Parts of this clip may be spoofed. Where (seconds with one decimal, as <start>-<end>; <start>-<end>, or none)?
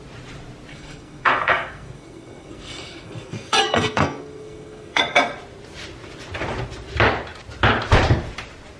0.7-5.0